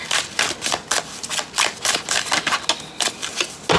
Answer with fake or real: real